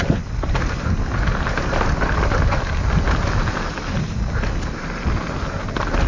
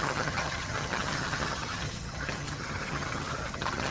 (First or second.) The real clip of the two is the first